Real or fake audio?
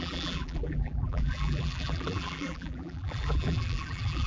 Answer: fake